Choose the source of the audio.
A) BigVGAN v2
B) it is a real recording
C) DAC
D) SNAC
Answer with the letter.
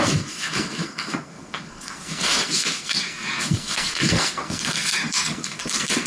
D